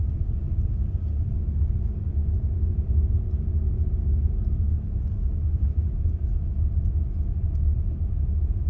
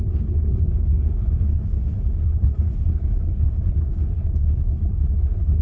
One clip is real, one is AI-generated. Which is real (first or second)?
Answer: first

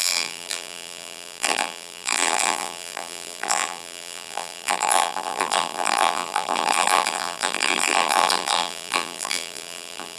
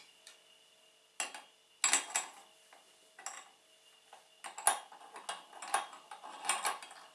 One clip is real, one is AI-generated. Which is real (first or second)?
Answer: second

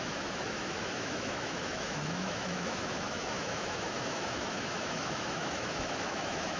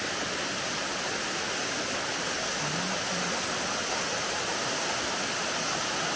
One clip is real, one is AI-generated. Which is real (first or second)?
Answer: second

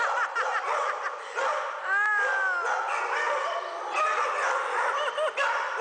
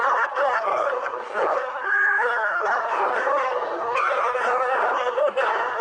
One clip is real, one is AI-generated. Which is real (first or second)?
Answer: first